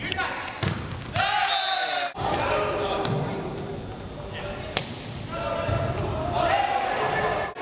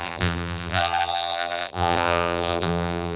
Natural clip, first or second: first